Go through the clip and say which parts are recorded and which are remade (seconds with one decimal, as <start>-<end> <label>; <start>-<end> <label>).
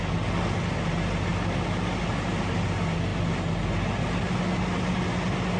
0.0-5.6 recorded